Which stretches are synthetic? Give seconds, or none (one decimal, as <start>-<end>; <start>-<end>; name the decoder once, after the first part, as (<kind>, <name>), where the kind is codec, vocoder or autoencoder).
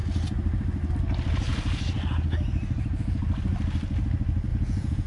4.5-5.1 (vocoder, Vocos)